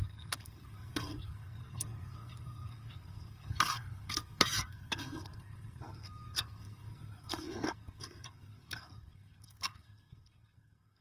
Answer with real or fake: fake